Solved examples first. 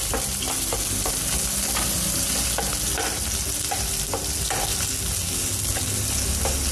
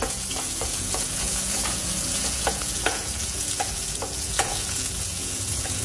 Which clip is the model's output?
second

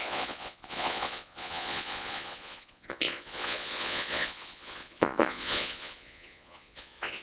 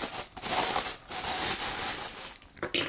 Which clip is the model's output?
first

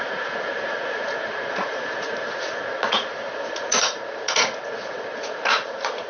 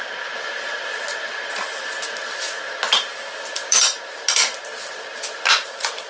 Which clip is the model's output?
first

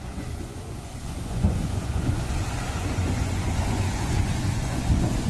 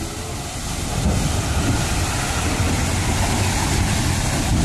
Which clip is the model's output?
first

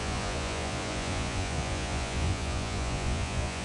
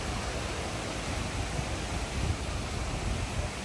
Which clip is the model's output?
first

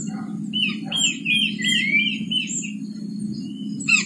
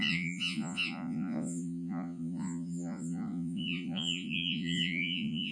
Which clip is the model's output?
second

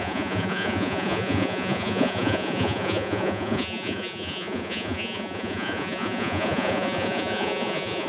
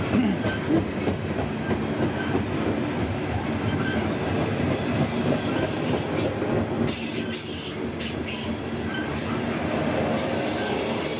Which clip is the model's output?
first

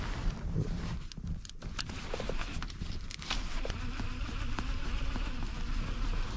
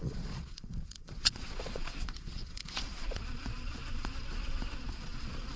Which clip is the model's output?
second